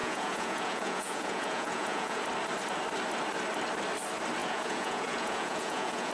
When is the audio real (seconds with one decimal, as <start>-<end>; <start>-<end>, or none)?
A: 2.2-4.4